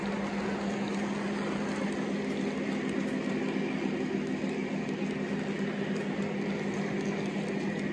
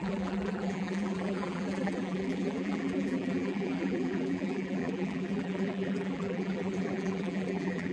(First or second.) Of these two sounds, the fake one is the second